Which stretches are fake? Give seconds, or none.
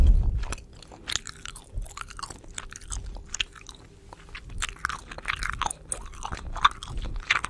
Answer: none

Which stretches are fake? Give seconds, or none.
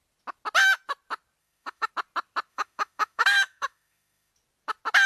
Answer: 1.4-1.9 (autoencoder, DAC-VAE); 2.5-4.3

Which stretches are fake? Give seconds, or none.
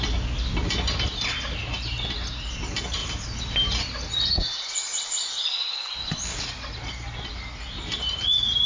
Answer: none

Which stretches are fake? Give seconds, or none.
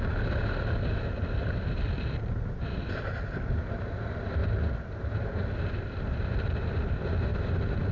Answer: none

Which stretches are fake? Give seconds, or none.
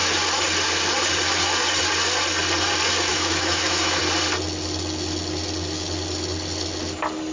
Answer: 3.1-4.0 (autoencoder, DAC-VAE)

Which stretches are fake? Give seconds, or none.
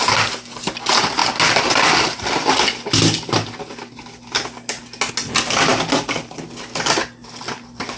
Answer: none